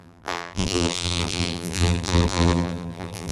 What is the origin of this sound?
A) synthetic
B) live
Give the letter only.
A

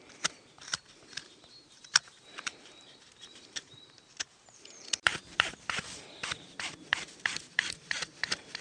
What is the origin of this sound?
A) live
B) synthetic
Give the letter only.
B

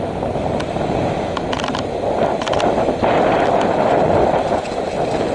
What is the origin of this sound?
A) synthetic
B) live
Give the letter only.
B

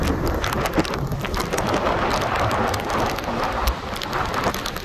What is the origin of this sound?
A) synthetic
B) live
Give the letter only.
B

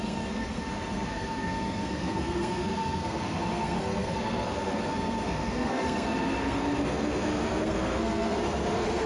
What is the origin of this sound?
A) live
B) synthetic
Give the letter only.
B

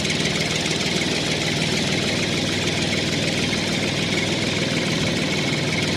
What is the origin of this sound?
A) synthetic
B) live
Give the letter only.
B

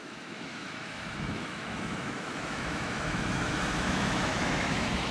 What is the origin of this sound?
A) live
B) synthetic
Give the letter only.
B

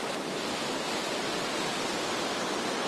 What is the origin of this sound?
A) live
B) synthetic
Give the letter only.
A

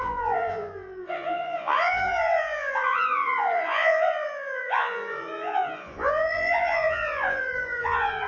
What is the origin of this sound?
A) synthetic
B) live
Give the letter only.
A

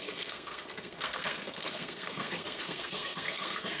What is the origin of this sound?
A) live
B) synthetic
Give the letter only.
B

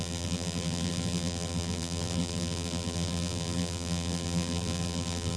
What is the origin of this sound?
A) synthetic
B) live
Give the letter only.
A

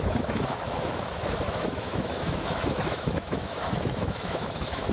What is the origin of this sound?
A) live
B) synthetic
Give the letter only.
B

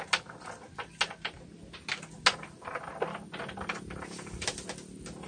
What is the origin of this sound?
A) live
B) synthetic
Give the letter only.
A